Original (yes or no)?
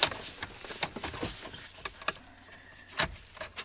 yes